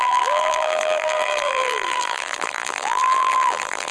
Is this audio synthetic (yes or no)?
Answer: yes